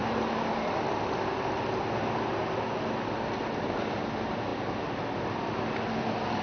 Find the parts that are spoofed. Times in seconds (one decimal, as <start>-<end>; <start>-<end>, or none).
none